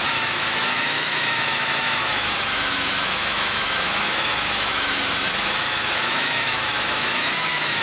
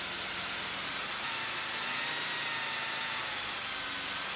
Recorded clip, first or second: second